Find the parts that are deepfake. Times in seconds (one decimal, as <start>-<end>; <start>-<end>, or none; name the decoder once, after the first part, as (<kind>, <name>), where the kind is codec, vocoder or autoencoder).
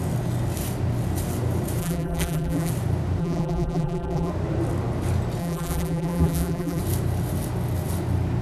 1.8-2.7 (vocoder, BigVGAN v2); 3.2-4.3; 5.4-6.8